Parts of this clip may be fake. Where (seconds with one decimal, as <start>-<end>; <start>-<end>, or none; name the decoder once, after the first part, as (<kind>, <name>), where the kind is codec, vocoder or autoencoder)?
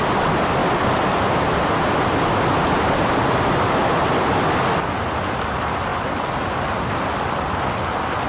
none